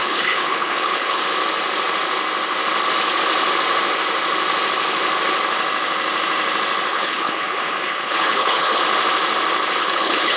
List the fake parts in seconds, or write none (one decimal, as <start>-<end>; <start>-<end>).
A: 0.0-1.2; 6.9-8.8; 9.8-10.4